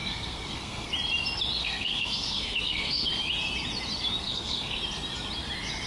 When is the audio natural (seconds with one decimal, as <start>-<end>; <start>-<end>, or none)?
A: 0.9-1.6; 3.1-4.2; 4.8-5.9